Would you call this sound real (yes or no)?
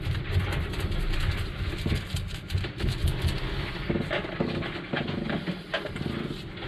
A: yes